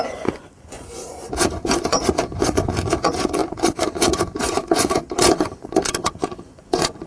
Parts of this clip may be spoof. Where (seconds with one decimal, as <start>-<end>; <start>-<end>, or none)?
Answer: 0.0-7.1